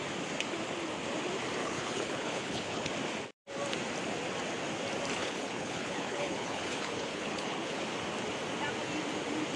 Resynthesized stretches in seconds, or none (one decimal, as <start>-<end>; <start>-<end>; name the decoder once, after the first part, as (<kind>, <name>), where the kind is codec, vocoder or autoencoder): 1.6-2.9 (codec, HILCodec); 5.2-7.8